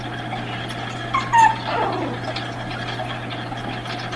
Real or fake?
real